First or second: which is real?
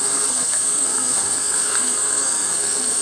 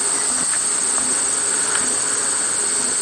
second